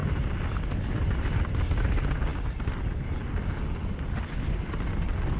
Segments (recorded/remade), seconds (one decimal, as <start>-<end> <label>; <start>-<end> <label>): 0.0-5.4 recorded